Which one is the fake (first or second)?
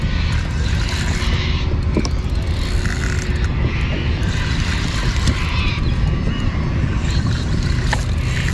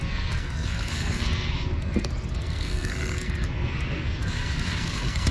second